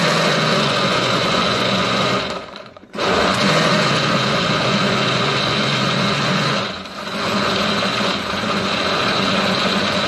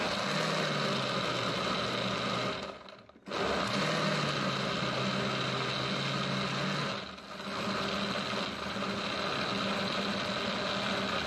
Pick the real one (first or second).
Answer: second